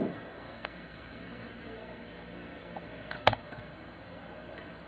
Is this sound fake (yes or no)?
yes